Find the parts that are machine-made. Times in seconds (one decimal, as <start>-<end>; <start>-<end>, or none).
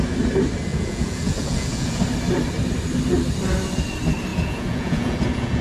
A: 0.7-2.0; 4.3-5.6